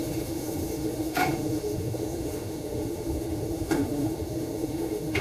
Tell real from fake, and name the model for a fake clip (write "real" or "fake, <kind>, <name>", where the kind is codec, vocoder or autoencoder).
fake, autoencoder, DAC-VAE